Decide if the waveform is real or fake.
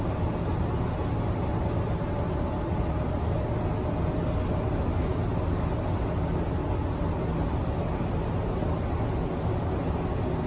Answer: real